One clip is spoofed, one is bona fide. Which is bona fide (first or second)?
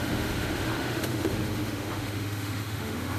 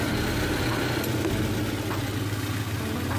second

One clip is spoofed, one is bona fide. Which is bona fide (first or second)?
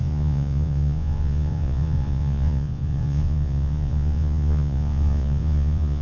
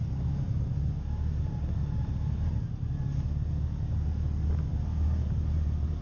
second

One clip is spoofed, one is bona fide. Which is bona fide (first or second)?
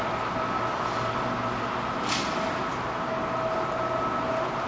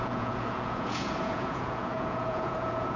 first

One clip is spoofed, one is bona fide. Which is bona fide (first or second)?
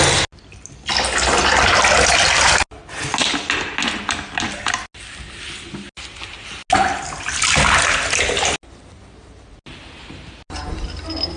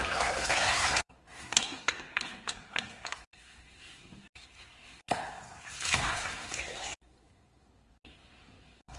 first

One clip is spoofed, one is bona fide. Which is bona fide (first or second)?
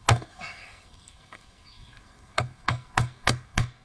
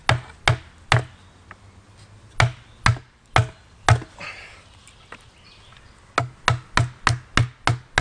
second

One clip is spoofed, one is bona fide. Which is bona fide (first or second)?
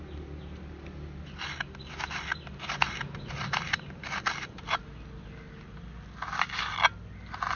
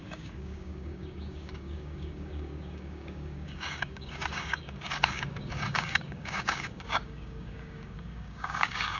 first